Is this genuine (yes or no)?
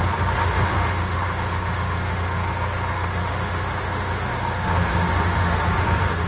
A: no